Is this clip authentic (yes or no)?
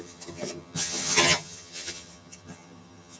no